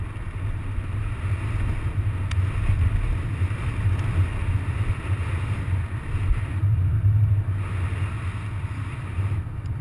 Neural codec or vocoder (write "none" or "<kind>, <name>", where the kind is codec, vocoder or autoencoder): none